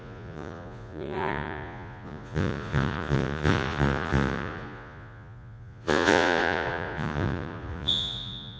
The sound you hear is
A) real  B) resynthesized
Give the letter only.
B